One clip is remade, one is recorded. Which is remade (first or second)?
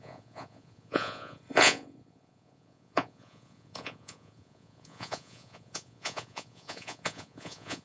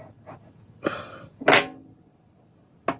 first